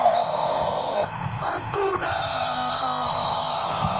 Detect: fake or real fake